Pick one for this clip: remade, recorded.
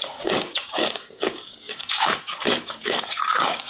remade